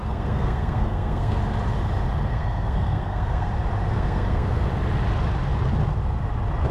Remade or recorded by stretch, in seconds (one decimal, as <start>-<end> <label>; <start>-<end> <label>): 0.0-1.4 remade; 1.4-2.3 recorded; 2.3-3.5 remade; 3.5-3.9 recorded; 3.9-4.7 remade; 4.7-6.7 recorded